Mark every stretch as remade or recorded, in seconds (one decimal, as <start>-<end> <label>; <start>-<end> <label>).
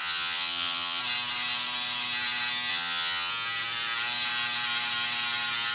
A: 0.0-1.0 remade; 1.0-2.7 recorded; 2.7-3.3 remade; 3.3-5.7 recorded